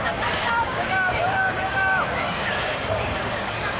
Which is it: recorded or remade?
remade